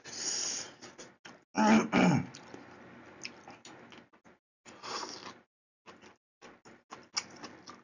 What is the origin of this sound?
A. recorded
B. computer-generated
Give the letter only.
A